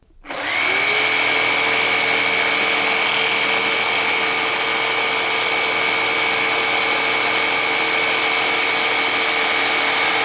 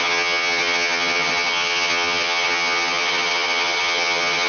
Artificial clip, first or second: second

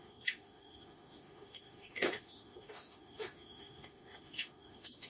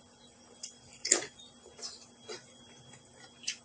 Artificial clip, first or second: first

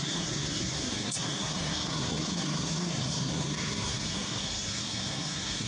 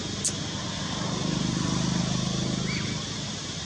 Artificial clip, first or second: first